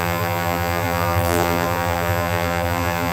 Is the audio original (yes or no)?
no